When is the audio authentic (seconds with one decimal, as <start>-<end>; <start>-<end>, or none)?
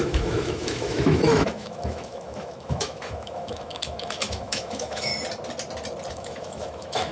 5.1-6.1